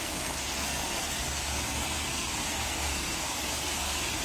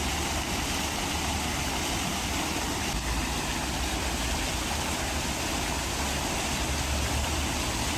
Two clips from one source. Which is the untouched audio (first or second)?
second